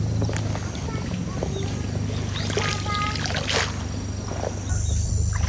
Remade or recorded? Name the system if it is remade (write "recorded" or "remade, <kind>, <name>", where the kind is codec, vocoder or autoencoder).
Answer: recorded